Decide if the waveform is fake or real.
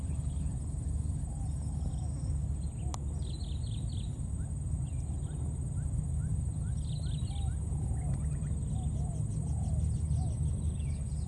real